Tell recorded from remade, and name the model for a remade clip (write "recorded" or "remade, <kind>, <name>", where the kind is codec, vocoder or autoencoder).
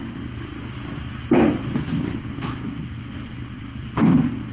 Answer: remade, vocoder, BigVGAN v2